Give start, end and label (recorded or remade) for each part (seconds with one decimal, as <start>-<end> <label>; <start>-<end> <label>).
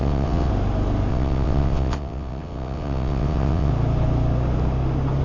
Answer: 0.0-0.5 remade; 0.5-1.1 recorded; 1.1-3.7 remade; 3.7-5.2 recorded